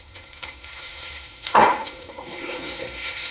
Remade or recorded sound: remade